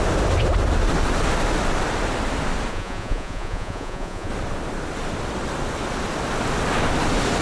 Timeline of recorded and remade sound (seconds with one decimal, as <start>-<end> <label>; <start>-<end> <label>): 0.0-2.7 recorded; 2.7-4.3 remade; 4.3-7.4 recorded